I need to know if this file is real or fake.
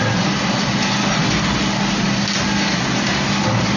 real